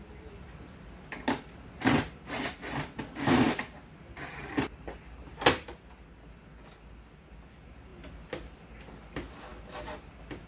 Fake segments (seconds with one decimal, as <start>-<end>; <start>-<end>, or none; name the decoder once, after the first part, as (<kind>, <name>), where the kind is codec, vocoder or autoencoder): none